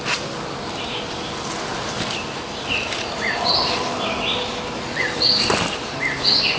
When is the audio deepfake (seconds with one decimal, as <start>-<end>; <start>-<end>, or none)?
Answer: 0.0-6.6